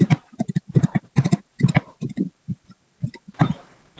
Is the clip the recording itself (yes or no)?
no